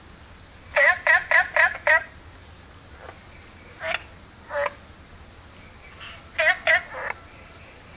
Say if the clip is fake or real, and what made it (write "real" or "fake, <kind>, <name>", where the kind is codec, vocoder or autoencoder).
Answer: real